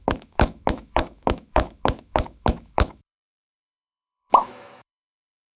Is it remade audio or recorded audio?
remade